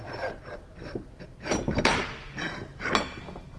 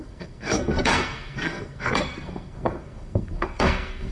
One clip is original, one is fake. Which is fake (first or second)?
second